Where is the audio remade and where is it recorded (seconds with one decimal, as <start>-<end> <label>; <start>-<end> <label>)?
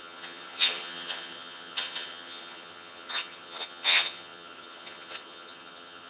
0.0-6.1 remade